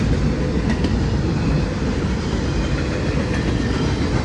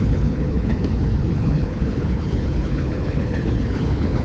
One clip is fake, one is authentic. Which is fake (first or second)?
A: second